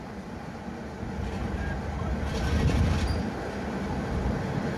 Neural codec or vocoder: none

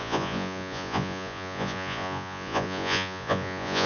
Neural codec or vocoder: vocoder, Vocos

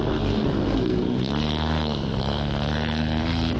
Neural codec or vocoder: codec, SNAC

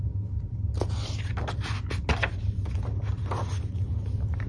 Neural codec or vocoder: none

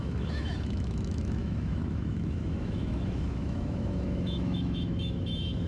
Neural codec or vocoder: autoencoder, DAC-VAE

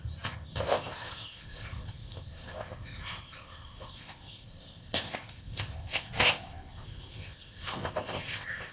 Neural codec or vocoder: codec, ZipCodec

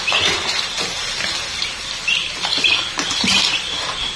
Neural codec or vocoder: none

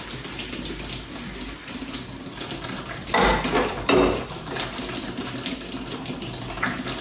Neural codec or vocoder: none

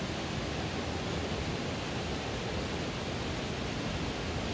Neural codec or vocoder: none